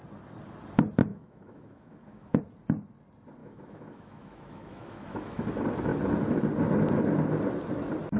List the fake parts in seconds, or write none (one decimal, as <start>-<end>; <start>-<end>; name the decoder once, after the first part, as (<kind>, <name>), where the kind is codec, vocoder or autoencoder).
1.1-2.4 (autoencoder, DAC-VAE); 3.4-5.4